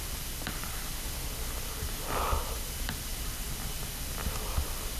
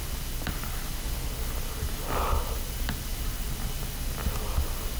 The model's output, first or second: first